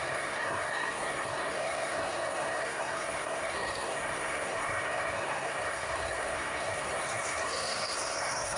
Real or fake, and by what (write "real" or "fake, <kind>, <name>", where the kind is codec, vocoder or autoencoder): fake, codec, SNAC